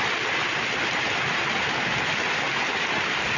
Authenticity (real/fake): real